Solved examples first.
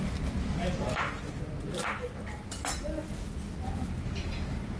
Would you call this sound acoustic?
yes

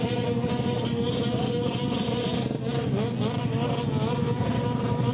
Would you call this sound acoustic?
yes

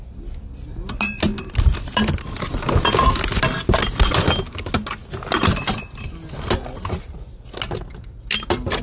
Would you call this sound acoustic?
yes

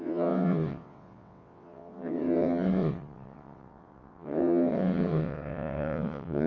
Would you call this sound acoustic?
no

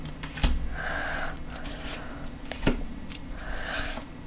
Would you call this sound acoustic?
yes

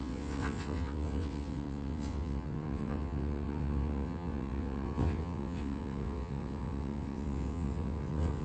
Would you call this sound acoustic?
no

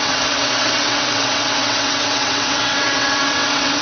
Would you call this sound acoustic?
no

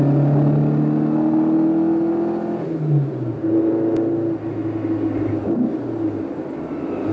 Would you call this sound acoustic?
yes